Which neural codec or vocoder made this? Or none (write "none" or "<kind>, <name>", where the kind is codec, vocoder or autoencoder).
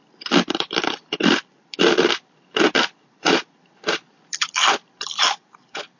vocoder, BigVGAN v2